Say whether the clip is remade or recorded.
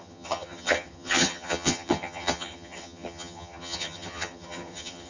remade